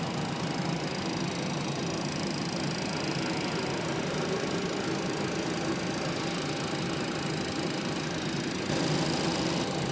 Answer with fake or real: real